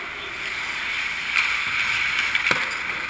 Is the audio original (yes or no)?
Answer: yes